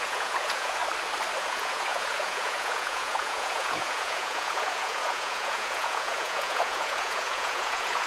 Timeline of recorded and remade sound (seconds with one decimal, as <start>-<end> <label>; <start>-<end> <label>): 0.0-0.8 remade; 0.8-1.4 recorded; 1.4-8.1 remade